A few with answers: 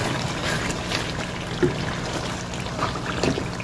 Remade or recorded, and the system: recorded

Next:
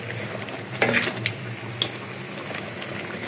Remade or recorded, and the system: recorded